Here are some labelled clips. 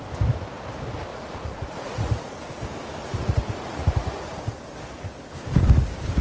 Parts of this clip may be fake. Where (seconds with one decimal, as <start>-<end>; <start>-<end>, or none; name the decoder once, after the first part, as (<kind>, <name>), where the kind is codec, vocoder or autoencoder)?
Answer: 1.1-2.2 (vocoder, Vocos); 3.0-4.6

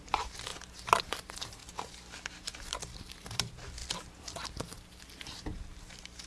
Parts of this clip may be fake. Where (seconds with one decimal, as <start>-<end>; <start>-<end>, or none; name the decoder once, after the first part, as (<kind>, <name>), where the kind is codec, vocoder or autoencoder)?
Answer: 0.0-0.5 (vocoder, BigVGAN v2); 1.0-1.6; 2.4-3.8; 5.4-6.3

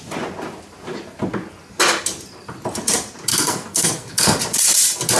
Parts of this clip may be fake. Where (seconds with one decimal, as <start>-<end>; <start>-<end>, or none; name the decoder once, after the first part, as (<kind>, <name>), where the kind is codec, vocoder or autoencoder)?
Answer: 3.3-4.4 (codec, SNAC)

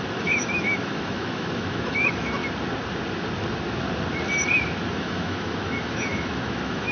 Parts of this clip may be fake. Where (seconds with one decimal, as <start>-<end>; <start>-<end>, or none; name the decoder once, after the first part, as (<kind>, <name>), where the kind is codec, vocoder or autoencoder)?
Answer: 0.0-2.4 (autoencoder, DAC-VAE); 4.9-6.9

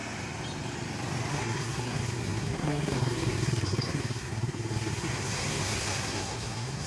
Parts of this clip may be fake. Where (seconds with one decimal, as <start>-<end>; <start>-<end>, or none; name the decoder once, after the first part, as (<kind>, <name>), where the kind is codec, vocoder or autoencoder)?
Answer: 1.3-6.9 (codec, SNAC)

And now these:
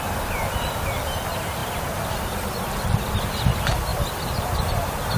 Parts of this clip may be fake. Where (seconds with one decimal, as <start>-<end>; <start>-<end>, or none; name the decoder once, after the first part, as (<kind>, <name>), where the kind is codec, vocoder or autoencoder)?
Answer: none

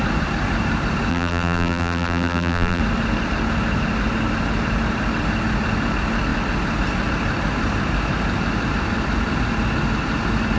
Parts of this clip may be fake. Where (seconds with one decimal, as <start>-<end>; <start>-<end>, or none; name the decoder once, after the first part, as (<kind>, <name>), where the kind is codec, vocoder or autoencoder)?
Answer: 1.1-2.8 (vocoder, BigVGAN v2)

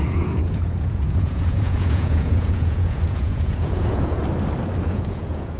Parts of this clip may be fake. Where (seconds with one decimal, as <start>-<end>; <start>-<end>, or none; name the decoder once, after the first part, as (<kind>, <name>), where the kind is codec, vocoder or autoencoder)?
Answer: 0.0-4.2 (vocoder, Vocos); 4.8-5.6